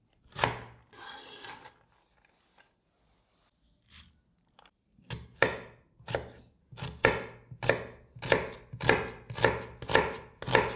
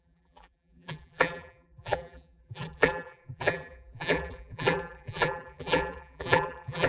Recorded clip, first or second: first